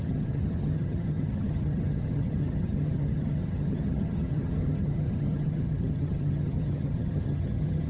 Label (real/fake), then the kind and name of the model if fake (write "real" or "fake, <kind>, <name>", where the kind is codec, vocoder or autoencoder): fake, vocoder, HiFi-GAN